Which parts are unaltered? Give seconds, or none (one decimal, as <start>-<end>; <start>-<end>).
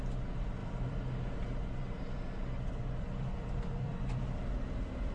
none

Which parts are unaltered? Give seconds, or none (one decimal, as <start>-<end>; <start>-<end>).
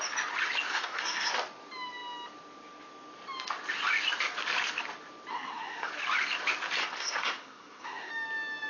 0.0-0.7; 1.3-5.3; 5.9-6.8; 8.1-8.7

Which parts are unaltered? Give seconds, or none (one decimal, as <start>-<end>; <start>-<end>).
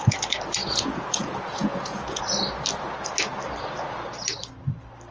0.0-0.6; 2.2-5.1